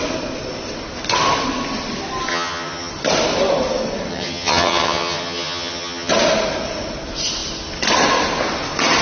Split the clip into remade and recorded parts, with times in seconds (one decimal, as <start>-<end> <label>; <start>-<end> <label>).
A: 0.0-2.3 recorded; 2.3-2.9 remade; 2.9-4.1 recorded; 4.1-6.1 remade; 6.1-9.0 recorded